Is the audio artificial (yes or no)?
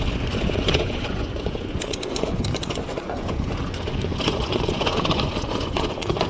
yes